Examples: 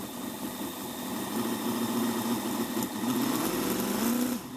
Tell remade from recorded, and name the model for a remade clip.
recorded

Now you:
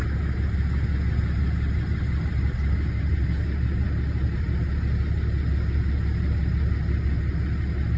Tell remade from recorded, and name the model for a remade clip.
recorded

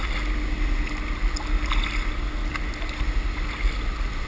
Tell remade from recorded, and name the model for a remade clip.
recorded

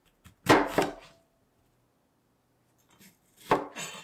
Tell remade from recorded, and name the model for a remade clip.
recorded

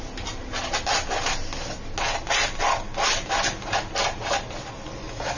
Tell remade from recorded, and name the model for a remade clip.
recorded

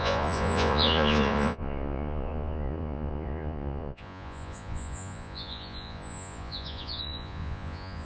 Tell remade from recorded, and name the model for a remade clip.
remade, vocoder, Vocos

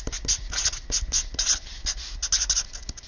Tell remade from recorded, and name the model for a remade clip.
recorded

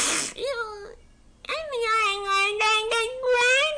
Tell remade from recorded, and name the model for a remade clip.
recorded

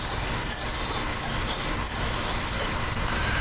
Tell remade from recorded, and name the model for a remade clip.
recorded